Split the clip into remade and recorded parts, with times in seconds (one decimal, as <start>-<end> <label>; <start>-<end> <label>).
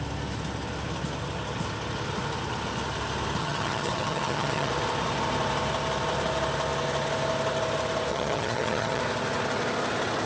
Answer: 0.0-3.4 recorded; 3.4-4.7 remade; 4.7-8.1 recorded; 8.1-9.0 remade; 9.0-10.3 recorded